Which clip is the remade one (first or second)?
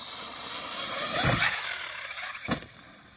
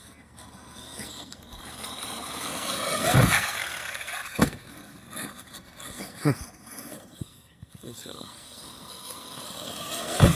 second